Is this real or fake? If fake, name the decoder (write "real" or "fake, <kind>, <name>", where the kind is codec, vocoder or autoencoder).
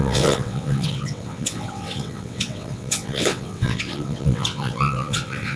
fake, vocoder, WaveNeXt